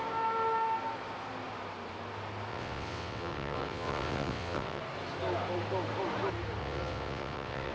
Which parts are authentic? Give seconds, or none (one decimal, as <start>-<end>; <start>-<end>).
0.0-2.5; 4.8-6.6